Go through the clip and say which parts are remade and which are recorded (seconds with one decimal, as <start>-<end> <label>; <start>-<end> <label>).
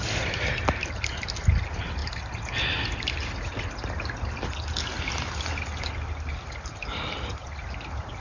0.0-8.2 recorded